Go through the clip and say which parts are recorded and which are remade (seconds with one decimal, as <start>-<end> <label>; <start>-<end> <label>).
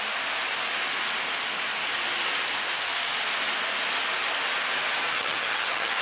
0.0-5.1 recorded; 5.1-6.0 remade